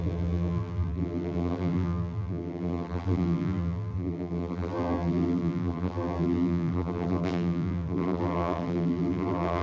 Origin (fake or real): fake